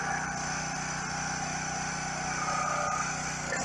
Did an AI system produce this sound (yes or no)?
no